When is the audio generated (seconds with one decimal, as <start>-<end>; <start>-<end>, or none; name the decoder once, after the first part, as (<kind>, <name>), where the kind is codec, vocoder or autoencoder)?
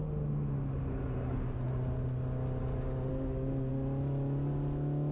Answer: 3.1-3.7 (codec, SNAC)